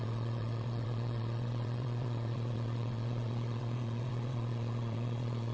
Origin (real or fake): fake